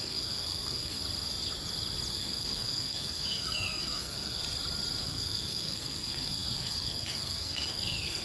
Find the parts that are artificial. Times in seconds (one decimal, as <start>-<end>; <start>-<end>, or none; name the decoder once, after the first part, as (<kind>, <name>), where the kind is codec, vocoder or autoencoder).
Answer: 0.0-1.0 (codec, SNAC); 2.1-4.4; 5.0-8.2